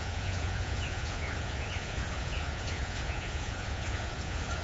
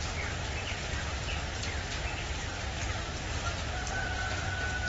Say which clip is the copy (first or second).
first